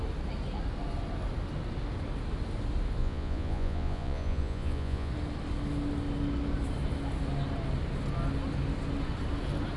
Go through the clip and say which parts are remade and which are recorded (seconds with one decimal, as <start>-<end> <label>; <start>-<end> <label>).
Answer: 0.0-3.0 recorded; 3.0-5.1 remade; 5.1-9.8 recorded